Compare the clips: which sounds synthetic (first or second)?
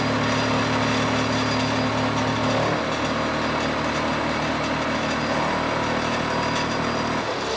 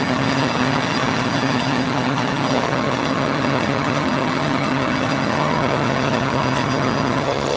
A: second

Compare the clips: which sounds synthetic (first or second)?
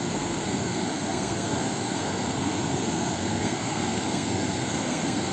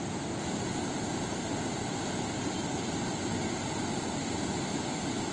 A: first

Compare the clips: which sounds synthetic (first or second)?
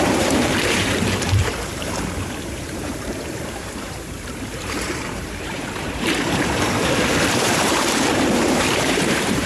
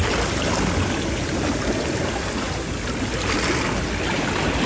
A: first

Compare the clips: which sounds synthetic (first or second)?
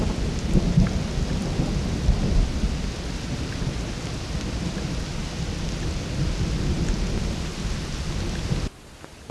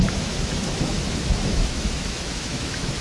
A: second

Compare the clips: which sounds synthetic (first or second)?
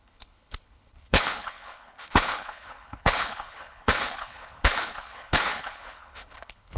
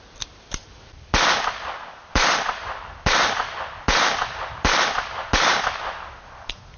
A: first